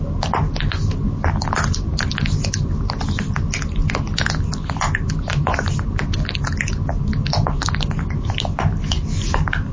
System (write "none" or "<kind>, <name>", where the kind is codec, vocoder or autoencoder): none